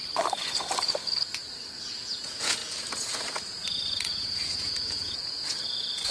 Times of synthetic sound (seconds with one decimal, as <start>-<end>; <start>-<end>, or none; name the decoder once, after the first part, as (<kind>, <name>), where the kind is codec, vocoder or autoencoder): 1.8-6.1 (vocoder, Vocos)